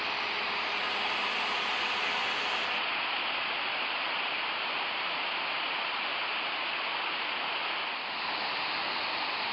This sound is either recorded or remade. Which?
recorded